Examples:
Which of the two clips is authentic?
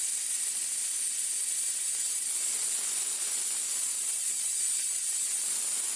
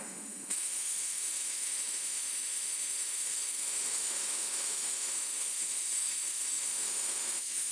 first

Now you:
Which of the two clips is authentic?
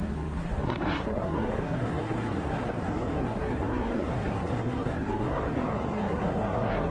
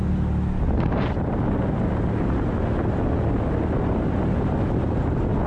second